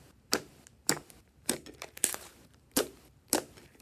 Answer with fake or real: fake